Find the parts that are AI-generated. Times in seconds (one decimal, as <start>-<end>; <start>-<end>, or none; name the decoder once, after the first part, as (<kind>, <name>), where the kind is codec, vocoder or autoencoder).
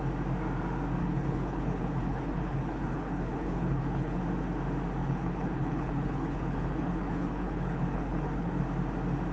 1.0-4.2 (codec, HILCodec); 5.0-8.6